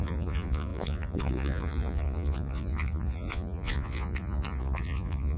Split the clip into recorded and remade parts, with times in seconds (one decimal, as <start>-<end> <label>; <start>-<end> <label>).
0.0-5.4 remade